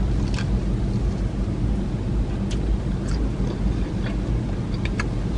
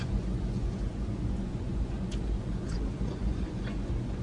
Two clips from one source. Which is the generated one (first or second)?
second